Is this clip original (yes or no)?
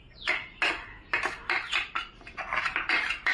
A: yes